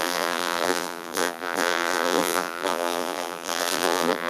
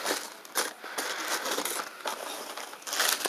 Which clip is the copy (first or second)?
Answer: first